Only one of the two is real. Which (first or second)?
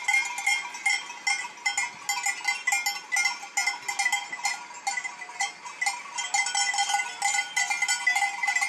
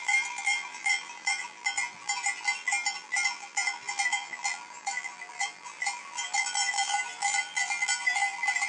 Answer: first